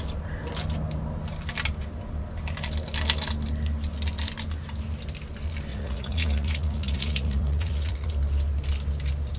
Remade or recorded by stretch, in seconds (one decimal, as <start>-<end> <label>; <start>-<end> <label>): 0.0-5.7 recorded; 5.7-8.1 remade; 8.1-9.4 recorded